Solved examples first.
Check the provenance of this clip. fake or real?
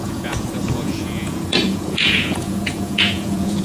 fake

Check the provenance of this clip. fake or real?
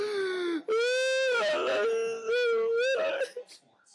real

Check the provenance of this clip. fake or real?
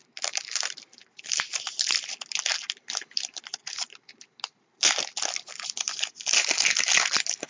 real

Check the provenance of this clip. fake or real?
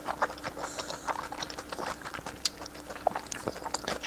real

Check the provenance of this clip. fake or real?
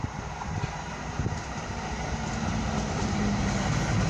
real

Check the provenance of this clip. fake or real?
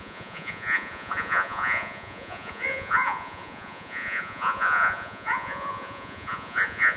fake